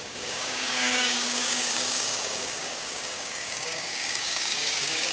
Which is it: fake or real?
fake